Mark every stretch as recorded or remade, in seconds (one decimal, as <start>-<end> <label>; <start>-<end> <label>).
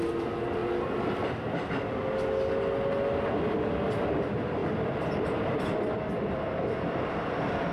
0.0-4.6 recorded; 4.6-7.7 remade